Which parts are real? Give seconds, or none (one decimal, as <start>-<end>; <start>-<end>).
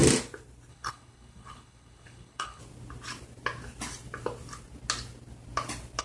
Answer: 0.0-0.7; 2.6-6.0